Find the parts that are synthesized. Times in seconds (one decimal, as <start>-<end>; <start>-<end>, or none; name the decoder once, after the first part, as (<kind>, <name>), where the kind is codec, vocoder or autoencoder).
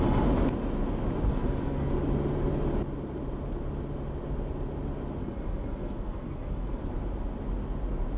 1.3-1.9 (codec, SNAC); 5.2-6.8